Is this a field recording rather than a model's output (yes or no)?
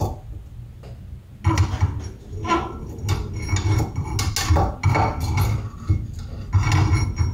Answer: yes